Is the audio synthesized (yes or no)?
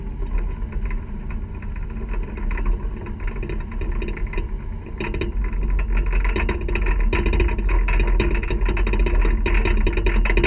no